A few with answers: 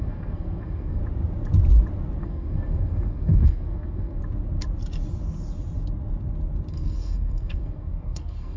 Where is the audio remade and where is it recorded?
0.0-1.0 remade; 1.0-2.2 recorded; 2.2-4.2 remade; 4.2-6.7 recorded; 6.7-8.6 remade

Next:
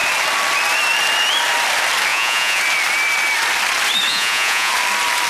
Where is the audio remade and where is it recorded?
0.0-2.1 recorded; 2.1-2.6 remade; 2.6-4.1 recorded; 4.1-4.7 remade; 4.7-5.3 recorded

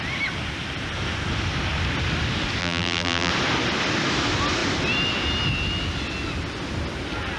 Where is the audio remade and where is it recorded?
0.0-2.6 recorded; 2.6-3.3 remade; 3.3-7.4 recorded

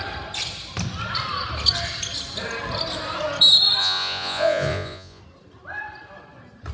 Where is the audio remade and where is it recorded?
0.0-3.8 recorded; 3.8-5.2 remade; 5.2-6.7 recorded

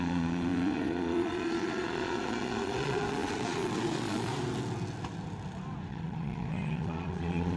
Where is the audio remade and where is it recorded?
0.0-4.3 remade; 4.3-5.9 recorded; 5.9-7.6 remade

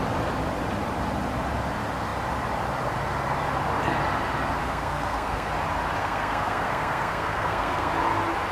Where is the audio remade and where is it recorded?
0.0-4.6 recorded; 4.6-5.5 remade; 5.5-6.0 recorded; 6.0-7.9 remade; 7.9-8.5 recorded

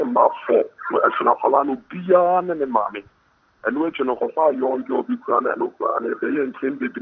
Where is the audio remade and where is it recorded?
0.0-1.6 remade; 1.6-4.2 recorded; 4.2-7.0 remade